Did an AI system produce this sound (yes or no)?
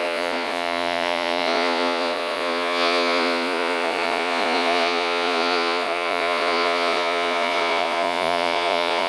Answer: yes